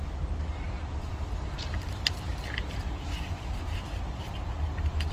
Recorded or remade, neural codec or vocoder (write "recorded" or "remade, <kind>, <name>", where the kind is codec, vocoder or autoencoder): remade, vocoder, BigVGAN v2